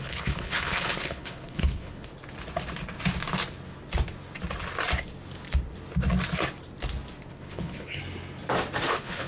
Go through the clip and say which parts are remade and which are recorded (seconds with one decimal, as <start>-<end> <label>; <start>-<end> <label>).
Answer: 0.0-2.1 remade; 2.1-7.3 recorded; 7.3-8.0 remade; 8.0-8.9 recorded; 8.9-9.3 remade